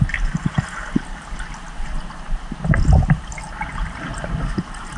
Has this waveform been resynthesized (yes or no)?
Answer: no